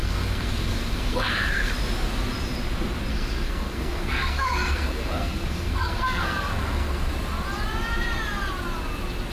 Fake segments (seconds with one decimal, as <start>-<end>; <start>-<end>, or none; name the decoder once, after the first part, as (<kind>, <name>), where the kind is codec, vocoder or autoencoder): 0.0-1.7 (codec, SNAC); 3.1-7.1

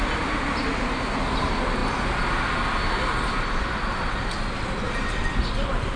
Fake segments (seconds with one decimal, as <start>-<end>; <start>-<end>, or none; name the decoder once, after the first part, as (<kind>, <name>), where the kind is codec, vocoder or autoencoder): none

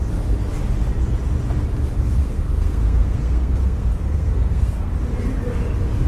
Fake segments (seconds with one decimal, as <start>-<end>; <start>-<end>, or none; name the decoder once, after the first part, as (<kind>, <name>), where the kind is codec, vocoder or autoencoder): 2.2-4.9 (codec, SNAC)